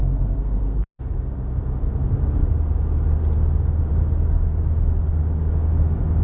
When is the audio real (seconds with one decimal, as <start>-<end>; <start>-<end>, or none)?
1.0-6.2